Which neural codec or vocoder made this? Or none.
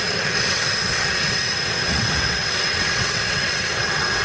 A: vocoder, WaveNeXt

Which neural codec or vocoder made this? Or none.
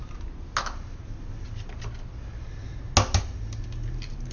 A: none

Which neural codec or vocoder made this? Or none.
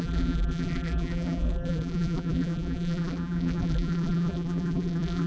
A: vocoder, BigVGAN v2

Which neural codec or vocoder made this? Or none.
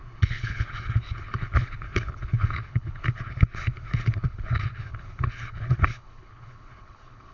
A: codec, HILCodec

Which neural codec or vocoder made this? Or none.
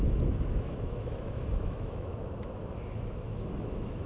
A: autoencoder, DAC-VAE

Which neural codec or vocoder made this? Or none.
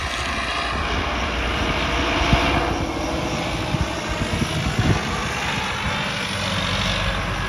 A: none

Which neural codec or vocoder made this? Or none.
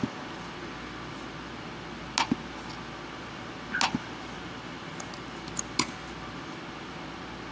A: none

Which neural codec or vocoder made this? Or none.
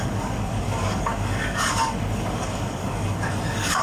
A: codec, DAC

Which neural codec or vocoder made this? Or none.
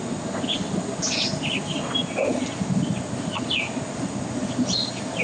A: none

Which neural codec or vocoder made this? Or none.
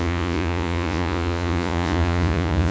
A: vocoder, Vocos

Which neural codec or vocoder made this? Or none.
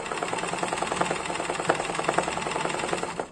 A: none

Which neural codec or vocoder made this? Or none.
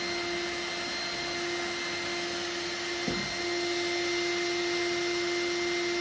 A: none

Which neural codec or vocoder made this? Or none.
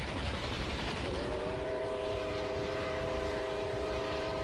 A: vocoder, BigVGAN v2